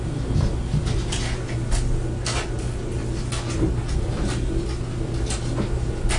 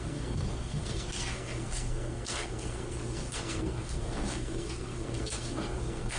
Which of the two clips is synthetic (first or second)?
second